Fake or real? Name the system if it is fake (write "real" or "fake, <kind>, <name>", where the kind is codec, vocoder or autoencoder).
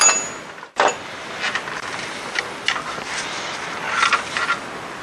real